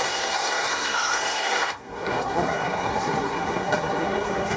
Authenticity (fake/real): fake